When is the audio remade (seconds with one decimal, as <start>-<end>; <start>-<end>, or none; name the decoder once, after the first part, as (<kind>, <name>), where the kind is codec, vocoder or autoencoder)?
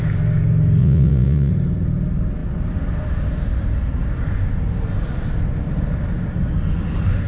0.8-1.5 (vocoder, Vocos)